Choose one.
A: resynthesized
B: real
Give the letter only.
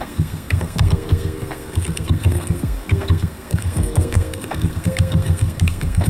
A